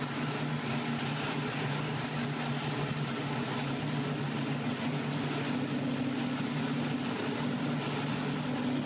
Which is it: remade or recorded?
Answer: recorded